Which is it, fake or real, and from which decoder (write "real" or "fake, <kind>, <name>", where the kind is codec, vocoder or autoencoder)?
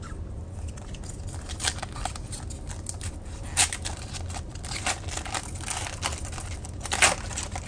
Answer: real